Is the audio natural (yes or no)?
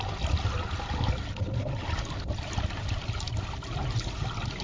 yes